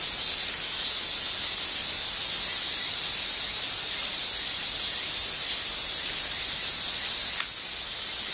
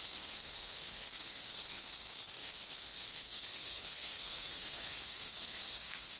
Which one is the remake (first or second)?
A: second